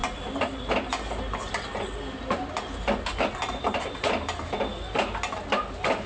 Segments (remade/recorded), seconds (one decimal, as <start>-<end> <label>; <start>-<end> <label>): 0.0-3.6 recorded; 3.6-4.7 remade; 4.7-6.1 recorded